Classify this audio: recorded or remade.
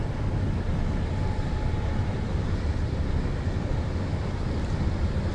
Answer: recorded